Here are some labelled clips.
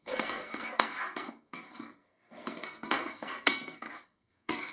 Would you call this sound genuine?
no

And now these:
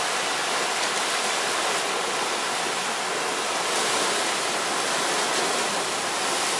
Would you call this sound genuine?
yes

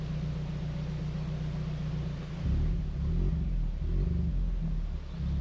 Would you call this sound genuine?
yes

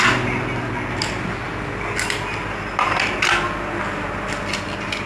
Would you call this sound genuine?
yes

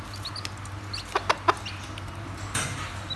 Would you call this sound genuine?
yes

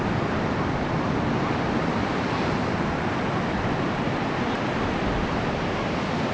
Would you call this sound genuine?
yes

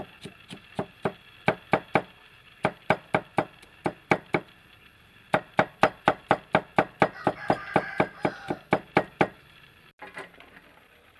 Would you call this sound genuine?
yes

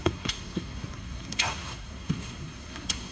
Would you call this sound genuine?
no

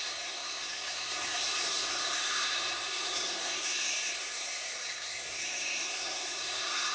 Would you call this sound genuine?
no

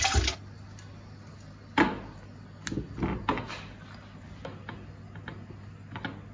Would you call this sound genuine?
yes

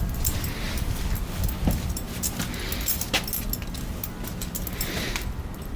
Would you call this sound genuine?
yes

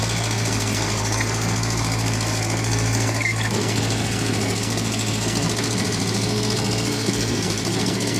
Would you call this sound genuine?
no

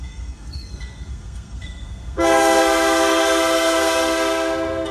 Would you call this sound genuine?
no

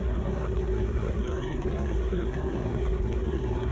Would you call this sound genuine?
no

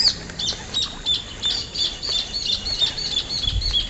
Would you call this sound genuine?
yes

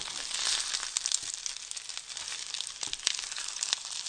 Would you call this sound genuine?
yes